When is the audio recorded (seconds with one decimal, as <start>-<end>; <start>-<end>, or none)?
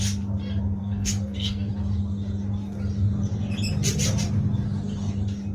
0.0-0.8; 1.7-5.5